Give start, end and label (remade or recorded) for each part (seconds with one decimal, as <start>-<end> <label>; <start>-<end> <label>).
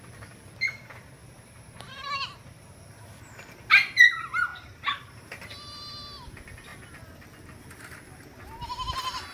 0.0-1.2 recorded; 1.2-2.9 remade; 2.9-4.5 recorded; 4.5-5.1 remade; 5.1-9.3 recorded